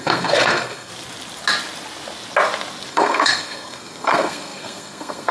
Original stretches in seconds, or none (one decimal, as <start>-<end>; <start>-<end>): 0.9-2.9